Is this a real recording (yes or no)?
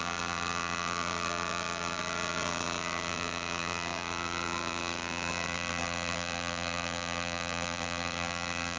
no